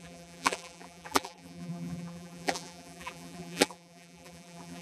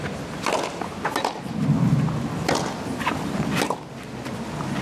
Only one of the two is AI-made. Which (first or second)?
first